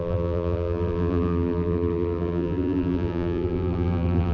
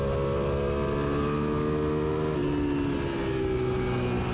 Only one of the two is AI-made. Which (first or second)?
first